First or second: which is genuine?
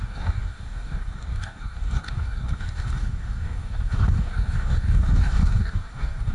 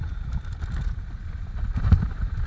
second